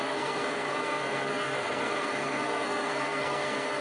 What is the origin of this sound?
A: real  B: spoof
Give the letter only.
B